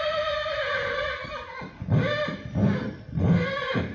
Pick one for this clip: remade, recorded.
recorded